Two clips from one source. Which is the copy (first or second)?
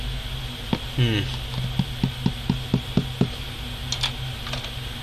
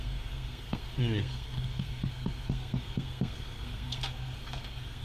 second